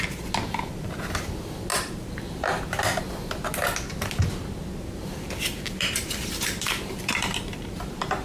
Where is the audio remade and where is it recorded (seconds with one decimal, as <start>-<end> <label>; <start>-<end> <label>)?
0.0-1.7 recorded; 1.7-3.0 remade; 3.0-5.5 recorded; 5.5-8.2 remade